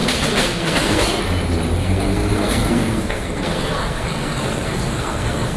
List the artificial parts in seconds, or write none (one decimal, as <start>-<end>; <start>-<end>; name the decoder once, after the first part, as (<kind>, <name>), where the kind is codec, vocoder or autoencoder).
0.0-1.2 (codec, SNAC); 1.8-5.6